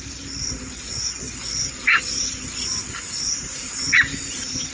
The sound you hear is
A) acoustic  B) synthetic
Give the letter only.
A